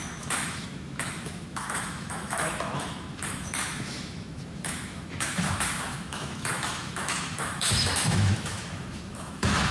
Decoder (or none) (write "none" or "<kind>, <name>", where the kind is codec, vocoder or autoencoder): autoencoder, DAC-VAE